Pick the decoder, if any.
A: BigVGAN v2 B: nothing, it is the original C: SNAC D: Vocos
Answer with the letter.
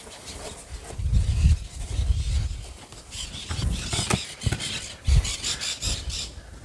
B